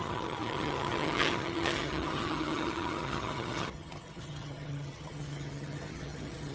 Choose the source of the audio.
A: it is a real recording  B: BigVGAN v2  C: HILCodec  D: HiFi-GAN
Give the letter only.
D